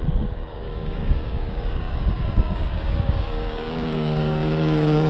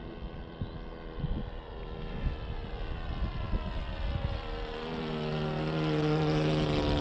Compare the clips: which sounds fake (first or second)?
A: first